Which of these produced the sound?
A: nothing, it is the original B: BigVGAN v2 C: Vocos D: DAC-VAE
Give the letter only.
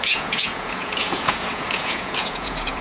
C